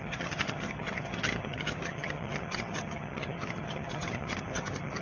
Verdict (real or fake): fake